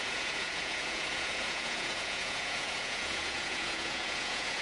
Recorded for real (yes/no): no